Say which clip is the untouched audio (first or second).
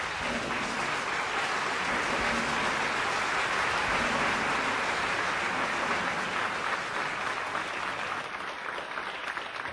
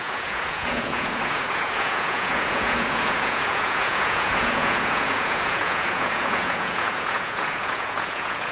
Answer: first